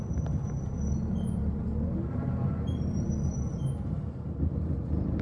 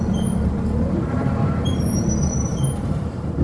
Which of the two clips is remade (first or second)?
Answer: second